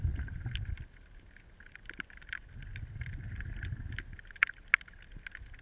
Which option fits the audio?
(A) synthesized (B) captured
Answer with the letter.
B